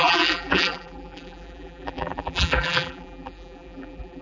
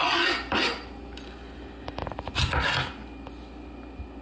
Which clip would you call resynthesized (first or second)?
first